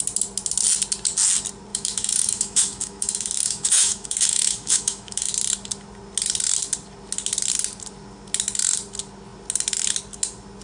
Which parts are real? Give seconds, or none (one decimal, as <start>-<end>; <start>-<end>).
0.0-1.7; 5.3-10.6